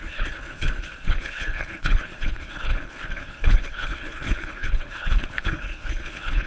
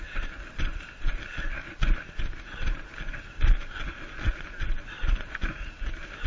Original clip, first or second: second